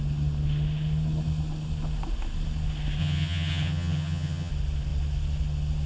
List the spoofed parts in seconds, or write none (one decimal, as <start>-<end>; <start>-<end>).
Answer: 3.0-4.5